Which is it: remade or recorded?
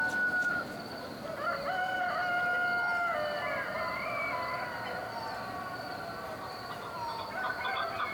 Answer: recorded